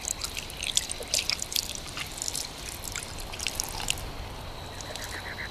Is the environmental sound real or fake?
fake